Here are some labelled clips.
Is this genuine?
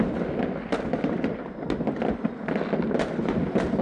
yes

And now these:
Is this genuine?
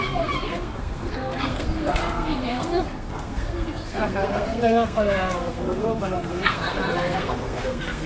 no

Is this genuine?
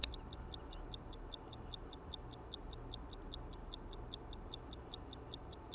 yes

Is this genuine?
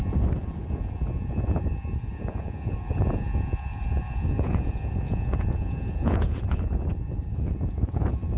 no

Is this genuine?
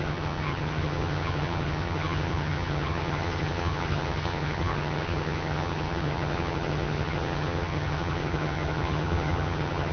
no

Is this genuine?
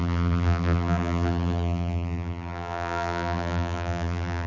no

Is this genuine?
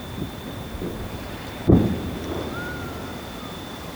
no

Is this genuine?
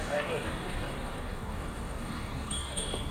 no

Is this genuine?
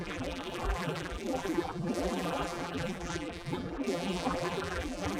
no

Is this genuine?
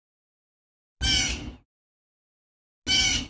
yes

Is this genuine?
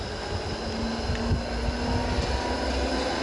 yes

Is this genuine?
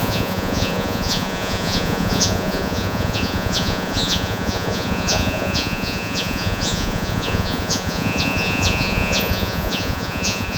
no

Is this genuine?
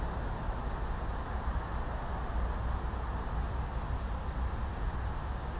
yes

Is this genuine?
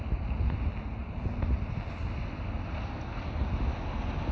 yes